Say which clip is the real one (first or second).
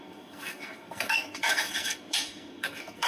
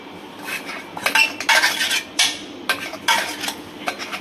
second